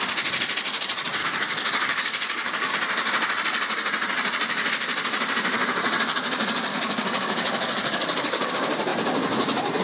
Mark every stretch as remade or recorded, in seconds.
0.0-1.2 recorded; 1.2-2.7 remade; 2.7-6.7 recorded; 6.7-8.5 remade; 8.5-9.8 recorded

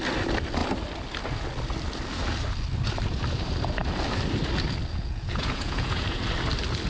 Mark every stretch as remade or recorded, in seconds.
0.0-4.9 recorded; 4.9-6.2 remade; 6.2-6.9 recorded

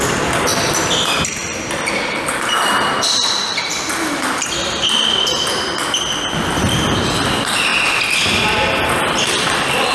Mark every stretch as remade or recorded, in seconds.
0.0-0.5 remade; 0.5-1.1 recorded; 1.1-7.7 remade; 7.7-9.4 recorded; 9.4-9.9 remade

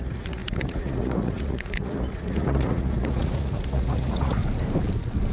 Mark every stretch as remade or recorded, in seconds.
0.0-4.4 remade; 4.4-5.3 recorded

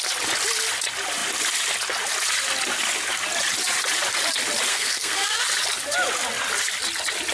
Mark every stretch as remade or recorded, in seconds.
0.0-4.7 recorded; 4.7-5.4 remade; 5.4-7.3 recorded

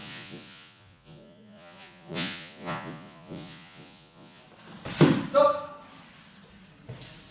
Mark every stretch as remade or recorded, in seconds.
0.0-4.4 remade; 4.4-7.3 recorded

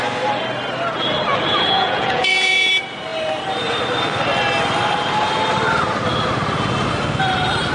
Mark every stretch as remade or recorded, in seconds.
0.0-1.3 recorded; 1.3-2.7 remade; 2.7-7.7 recorded